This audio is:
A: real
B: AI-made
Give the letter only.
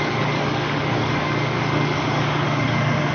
B